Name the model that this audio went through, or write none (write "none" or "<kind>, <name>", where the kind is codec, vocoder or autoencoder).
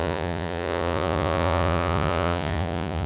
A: vocoder, Vocos